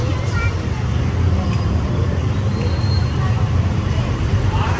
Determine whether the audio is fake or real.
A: fake